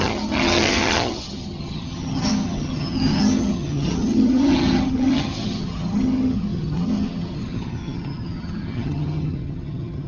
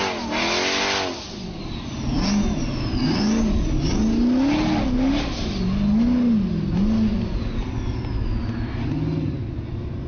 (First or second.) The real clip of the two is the second